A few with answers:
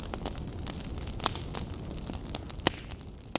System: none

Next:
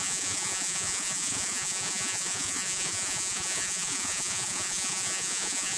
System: vocoder, Vocos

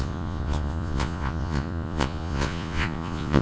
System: vocoder, Vocos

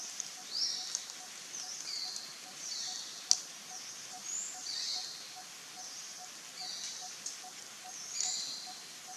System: none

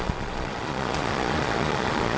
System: vocoder, Vocos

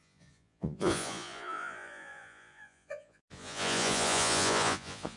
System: vocoder, Vocos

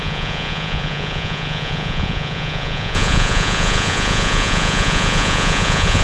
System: vocoder, Vocos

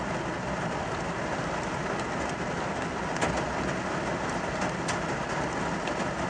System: none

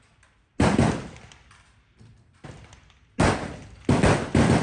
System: none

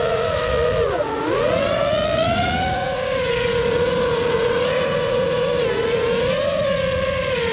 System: vocoder, Vocos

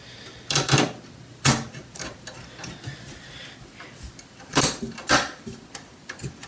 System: none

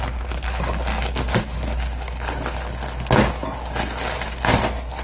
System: none